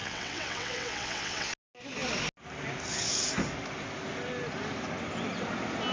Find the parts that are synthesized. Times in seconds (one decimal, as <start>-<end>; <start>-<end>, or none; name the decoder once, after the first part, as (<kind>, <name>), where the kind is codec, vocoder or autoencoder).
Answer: 0.0-1.5 (vocoder, WaveNeXt)